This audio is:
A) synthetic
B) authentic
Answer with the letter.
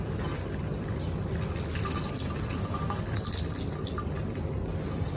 B